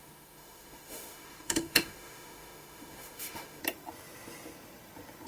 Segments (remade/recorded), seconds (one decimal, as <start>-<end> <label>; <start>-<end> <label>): 0.0-3.6 remade; 3.6-5.3 recorded